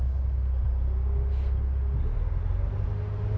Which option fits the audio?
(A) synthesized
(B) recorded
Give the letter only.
B